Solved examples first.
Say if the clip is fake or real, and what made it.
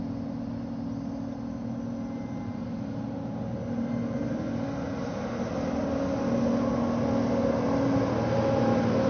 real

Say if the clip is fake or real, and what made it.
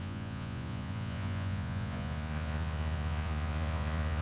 fake, vocoder, Vocos